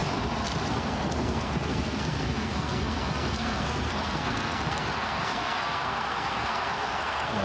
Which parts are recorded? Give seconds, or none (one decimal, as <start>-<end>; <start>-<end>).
0.0-0.7